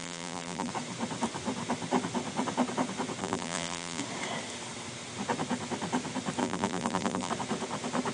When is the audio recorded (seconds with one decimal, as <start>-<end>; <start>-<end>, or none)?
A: 0.7-3.2; 4.0-6.4; 7.3-8.1